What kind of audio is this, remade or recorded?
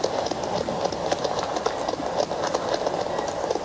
recorded